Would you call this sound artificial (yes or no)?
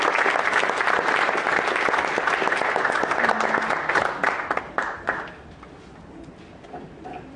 no